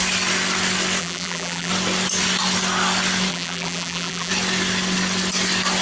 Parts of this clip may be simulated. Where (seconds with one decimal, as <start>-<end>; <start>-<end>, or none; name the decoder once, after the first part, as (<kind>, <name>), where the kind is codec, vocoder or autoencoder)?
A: 1.0-1.7 (vocoder, BigVGAN v2); 3.3-4.3